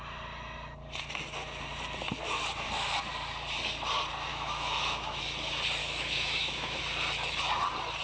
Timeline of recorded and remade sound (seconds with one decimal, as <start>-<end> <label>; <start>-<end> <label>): 0.0-4.3 recorded; 4.3-5.2 remade; 5.2-5.8 recorded; 5.8-6.8 remade; 6.8-8.0 recorded